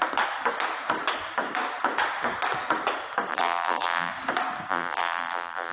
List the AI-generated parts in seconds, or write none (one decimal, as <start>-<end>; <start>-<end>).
3.3-4.1; 4.7-5.7